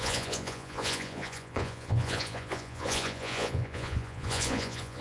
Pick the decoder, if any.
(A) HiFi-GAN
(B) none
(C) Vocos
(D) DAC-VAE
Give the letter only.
C